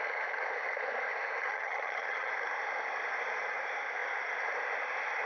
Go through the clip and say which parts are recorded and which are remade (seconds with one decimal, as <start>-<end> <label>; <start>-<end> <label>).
0.0-1.5 recorded; 1.5-2.3 remade; 2.3-5.3 recorded